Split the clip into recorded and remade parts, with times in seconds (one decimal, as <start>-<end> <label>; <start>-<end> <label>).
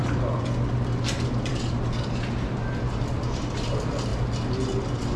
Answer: 0.0-5.2 recorded